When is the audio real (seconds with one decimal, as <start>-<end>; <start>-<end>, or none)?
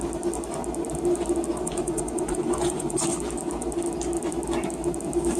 0.0-1.5; 3.0-5.4